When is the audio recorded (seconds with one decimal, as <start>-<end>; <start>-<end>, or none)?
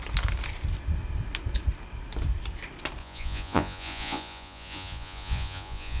0.0-3.0